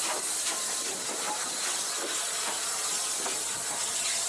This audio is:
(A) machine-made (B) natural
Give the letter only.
B